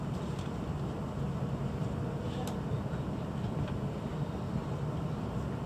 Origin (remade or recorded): remade